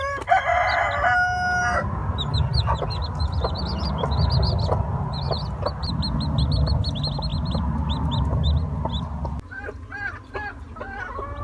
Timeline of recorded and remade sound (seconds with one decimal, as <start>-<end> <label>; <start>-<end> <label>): 0.0-11.4 recorded